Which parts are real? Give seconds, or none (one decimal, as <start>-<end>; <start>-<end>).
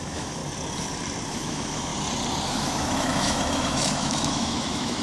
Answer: 0.4-1.3; 1.9-2.5